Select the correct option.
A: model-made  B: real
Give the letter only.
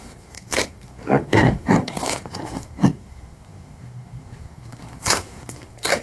A